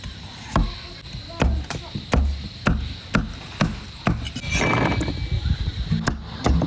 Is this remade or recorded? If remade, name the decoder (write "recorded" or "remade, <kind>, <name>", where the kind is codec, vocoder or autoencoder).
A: recorded